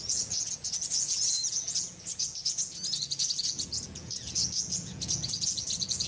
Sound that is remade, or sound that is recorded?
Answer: remade